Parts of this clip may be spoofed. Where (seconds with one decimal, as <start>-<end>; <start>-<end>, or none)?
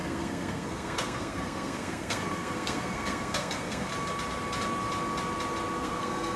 0.0-3.9; 5.8-6.4